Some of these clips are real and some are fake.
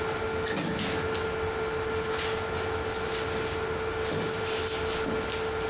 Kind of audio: real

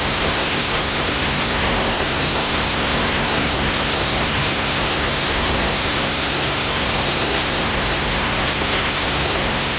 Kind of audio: fake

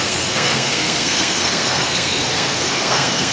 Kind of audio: fake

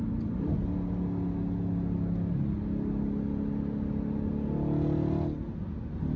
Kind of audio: real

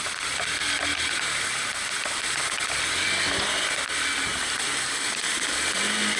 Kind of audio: real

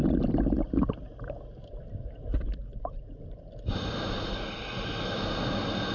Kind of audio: real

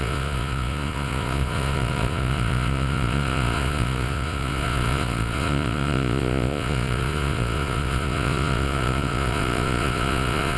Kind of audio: fake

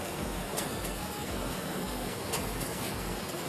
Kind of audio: fake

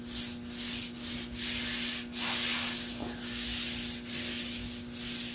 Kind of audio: real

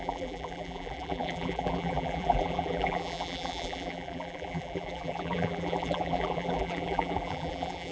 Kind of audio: fake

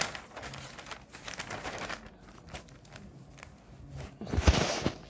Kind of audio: real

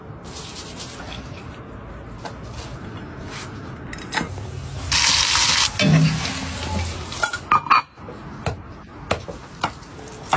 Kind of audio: real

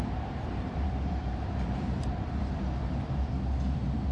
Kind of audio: fake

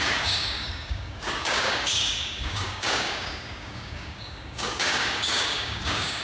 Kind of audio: fake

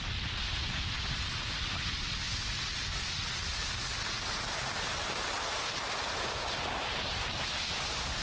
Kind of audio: real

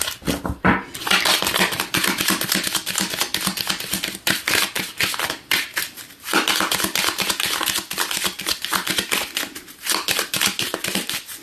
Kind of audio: real